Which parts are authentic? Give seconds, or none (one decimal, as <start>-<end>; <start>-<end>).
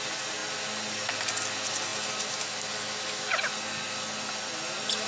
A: 0.0-5.1